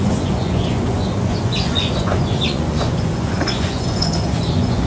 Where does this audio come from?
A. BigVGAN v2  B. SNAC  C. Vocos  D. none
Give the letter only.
C